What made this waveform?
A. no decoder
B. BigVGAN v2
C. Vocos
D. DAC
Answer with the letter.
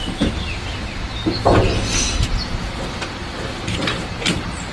A